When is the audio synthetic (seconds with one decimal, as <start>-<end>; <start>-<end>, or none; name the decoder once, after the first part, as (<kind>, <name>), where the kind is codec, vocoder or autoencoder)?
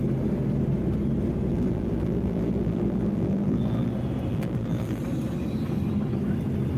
1.5-3.9 (vocoder, BigVGAN v2); 4.3-5.0